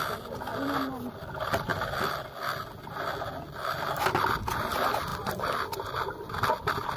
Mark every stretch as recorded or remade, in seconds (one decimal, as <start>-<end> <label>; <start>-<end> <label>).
0.0-0.5 remade; 0.5-1.1 recorded; 1.1-1.7 remade; 1.7-4.2 recorded; 4.2-7.0 remade